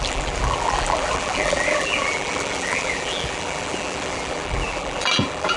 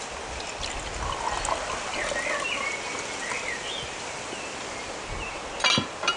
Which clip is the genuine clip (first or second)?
second